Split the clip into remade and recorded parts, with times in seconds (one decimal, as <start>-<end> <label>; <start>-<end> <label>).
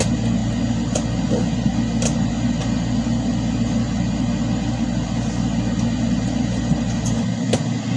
0.0-8.0 recorded